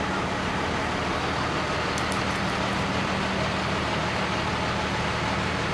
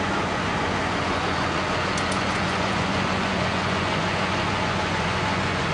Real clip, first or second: first